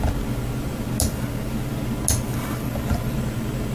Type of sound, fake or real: real